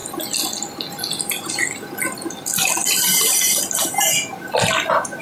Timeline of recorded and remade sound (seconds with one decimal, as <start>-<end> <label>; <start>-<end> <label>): 0.0-5.2 recorded

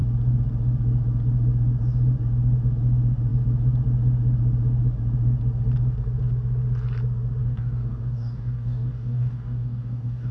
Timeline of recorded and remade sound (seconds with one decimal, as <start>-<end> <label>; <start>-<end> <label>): 0.0-7.4 recorded; 7.4-10.3 remade

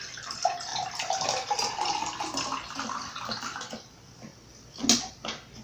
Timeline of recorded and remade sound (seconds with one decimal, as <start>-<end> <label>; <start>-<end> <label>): 0.0-5.6 recorded

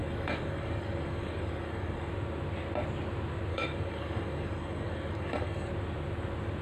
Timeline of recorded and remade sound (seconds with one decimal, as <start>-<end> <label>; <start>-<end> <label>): 0.0-2.1 remade; 2.1-3.5 recorded; 3.5-5.7 remade; 5.7-6.6 recorded

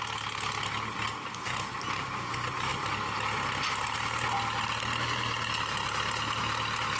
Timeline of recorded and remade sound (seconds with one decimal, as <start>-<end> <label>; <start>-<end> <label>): 0.0-7.0 recorded

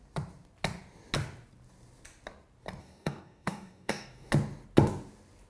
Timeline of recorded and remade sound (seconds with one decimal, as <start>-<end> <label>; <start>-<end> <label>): 0.0-2.8 recorded; 2.8-4.3 remade; 4.3-5.5 recorded